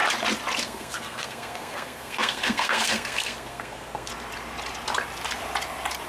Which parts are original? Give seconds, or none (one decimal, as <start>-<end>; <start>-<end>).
0.0-0.6; 4.1-6.1